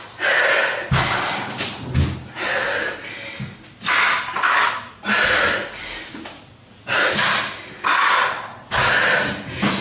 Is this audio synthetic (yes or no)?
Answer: no